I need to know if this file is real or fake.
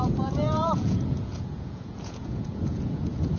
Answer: fake